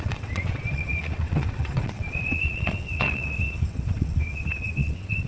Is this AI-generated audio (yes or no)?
yes